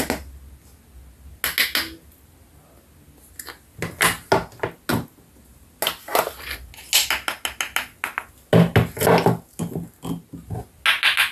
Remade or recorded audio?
recorded